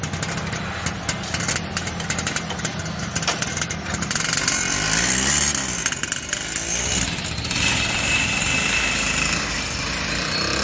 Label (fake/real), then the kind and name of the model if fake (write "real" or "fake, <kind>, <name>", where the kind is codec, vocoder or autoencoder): real